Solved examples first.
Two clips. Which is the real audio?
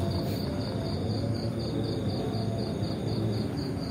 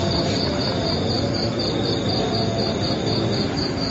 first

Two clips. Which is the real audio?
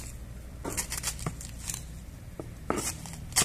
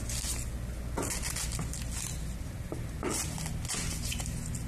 second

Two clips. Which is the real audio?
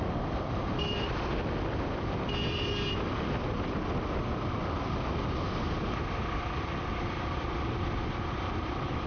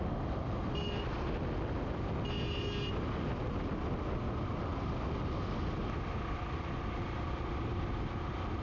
second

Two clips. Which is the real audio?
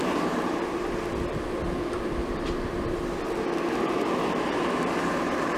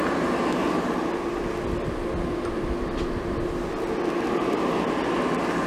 second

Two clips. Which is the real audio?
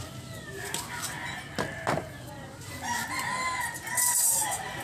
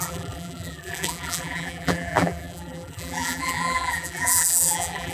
first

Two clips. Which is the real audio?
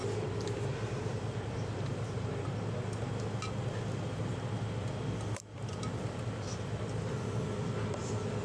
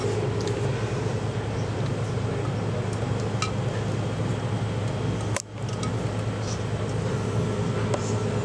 second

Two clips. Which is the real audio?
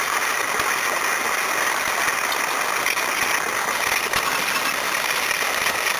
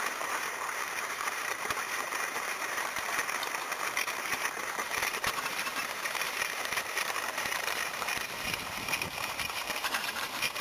first